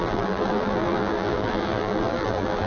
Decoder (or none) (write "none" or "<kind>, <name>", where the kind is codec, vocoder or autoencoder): vocoder, BigVGAN v2